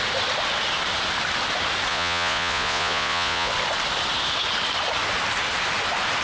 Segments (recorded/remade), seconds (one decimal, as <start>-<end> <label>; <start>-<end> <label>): 0.0-1.9 recorded; 1.9-3.5 remade; 3.5-6.2 recorded